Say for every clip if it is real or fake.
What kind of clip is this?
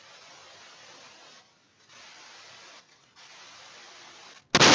real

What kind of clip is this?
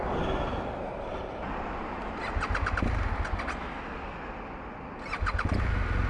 real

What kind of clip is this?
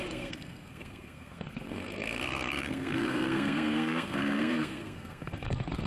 fake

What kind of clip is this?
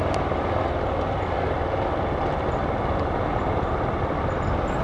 real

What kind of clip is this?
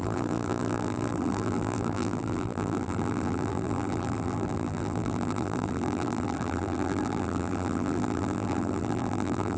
fake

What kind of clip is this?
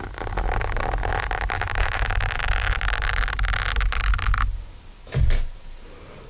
real